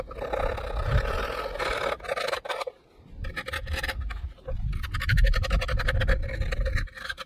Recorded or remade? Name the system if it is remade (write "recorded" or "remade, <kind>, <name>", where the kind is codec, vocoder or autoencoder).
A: recorded